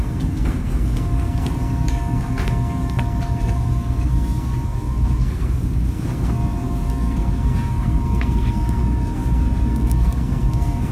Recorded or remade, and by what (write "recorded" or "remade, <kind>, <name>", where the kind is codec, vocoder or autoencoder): remade, codec, SNAC